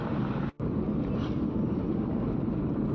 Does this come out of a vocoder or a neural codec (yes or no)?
no